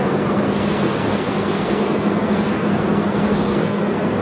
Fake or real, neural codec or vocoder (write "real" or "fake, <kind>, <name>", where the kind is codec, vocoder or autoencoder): fake, codec, SNAC